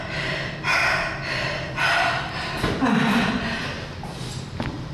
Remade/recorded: recorded